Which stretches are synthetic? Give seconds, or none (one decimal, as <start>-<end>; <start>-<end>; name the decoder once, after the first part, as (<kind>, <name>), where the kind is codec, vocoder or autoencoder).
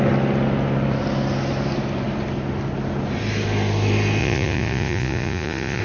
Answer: 4.2-5.8 (vocoder, Vocos)